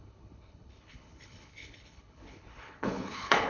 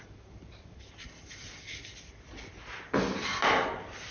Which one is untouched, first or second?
second